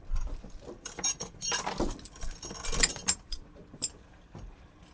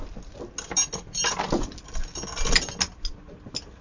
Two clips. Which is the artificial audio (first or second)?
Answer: first